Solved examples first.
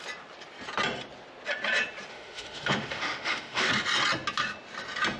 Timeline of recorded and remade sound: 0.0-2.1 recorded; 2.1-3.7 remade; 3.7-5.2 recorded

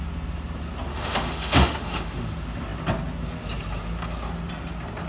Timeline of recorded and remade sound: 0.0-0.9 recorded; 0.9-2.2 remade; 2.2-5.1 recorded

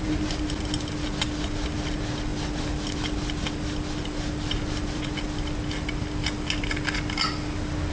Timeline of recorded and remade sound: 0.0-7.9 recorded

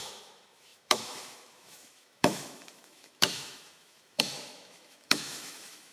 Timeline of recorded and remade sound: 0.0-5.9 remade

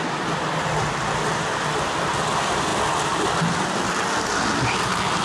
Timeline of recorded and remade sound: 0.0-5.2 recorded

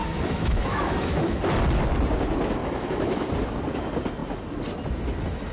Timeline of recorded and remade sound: 0.0-1.4 remade; 1.4-2.6 recorded; 2.6-3.3 remade; 3.3-5.5 recorded